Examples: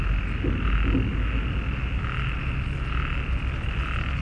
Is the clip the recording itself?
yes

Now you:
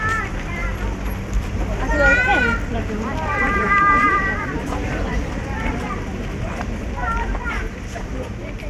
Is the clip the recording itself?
no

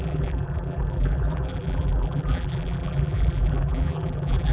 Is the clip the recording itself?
no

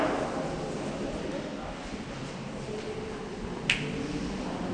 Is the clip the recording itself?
yes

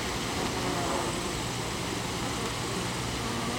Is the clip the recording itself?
yes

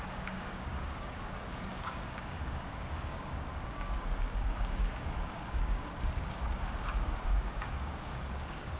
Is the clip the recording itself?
no